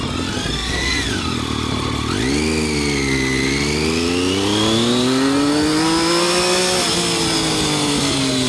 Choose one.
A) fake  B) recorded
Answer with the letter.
B